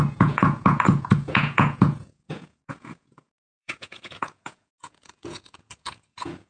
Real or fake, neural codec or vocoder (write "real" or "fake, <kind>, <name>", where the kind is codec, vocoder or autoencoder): fake, vocoder, Vocos